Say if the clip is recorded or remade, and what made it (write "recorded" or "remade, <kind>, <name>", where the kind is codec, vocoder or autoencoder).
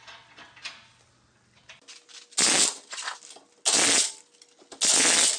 recorded